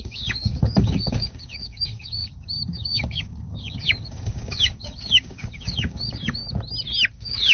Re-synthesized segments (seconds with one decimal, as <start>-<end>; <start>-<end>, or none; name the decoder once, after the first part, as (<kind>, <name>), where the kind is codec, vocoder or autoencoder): 0.0-6.4 (codec, DAC); 7.1-7.5